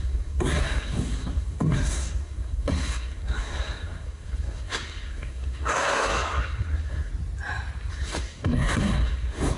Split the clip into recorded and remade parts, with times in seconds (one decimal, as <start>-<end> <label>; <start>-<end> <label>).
0.0-7.1 remade; 7.1-7.9 recorded; 7.9-9.6 remade